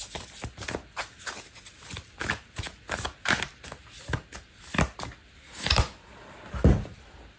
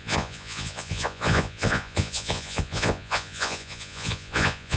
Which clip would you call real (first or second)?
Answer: first